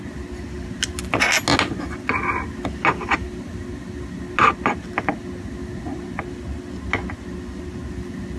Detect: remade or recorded recorded